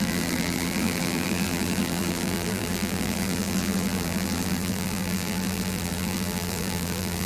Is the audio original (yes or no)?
no